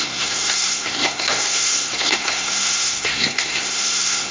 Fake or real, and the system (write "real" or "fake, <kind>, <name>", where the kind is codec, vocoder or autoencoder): fake, codec, SNAC